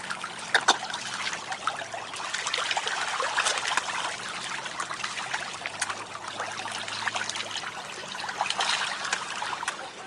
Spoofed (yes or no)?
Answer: no